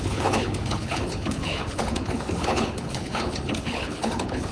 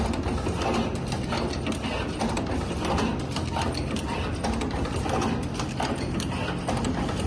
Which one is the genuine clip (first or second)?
second